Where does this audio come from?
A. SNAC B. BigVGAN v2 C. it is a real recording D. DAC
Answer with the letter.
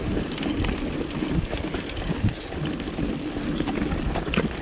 C